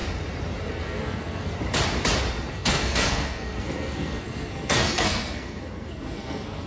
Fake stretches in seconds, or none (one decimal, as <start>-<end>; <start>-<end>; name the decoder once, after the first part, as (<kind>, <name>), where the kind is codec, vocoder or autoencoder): 0.7-1.5 (codec, SNAC); 2.5-6.7